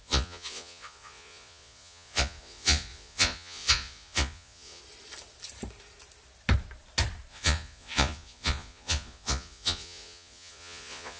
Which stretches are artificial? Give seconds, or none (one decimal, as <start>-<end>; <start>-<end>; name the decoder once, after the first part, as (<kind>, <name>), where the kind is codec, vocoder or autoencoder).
0.0-4.8 (vocoder, Vocos); 7.3-11.2